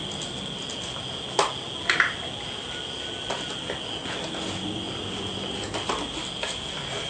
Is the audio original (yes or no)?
yes